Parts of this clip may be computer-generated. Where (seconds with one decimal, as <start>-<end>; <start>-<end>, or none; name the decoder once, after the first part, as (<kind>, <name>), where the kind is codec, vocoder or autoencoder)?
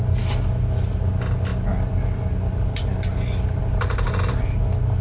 none